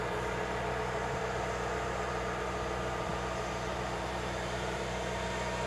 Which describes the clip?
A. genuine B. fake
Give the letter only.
B